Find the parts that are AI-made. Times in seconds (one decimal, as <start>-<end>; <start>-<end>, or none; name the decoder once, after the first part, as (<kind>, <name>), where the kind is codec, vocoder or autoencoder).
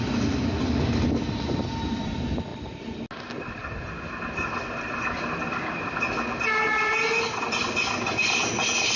none